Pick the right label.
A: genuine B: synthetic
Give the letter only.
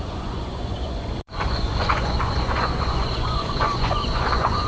B